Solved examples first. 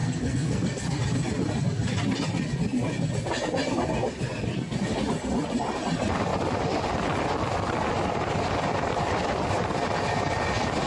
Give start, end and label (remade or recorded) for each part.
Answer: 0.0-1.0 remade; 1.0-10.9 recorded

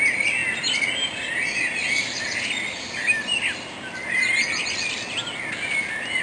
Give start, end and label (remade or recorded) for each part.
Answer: 0.0-6.2 recorded

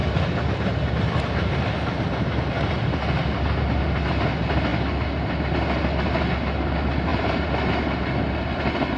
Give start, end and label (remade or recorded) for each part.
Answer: 0.0-7.1 recorded; 7.1-7.8 remade; 7.8-9.0 recorded

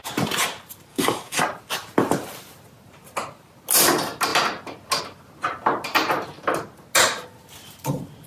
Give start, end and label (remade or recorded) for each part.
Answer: 0.0-0.9 recorded; 0.9-1.4 remade; 1.4-8.3 recorded

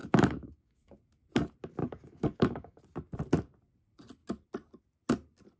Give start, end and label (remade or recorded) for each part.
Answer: 0.0-1.0 remade; 1.0-1.8 recorded; 1.8-2.8 remade; 2.8-5.6 recorded

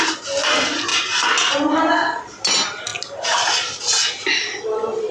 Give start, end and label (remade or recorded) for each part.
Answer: 0.0-5.1 recorded

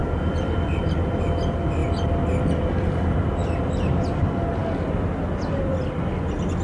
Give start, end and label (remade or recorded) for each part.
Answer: 0.0-1.2 remade; 1.2-6.6 recorded

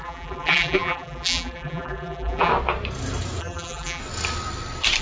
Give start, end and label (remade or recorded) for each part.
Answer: 0.0-2.5 remade; 2.5-3.4 recorded; 3.4-4.0 remade; 4.0-5.0 recorded